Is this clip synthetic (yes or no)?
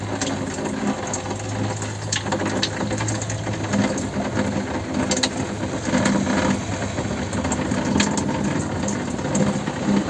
no